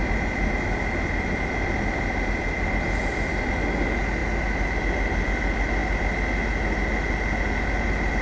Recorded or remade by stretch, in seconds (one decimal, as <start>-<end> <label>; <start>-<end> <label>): 0.0-8.2 recorded